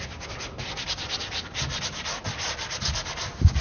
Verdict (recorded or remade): recorded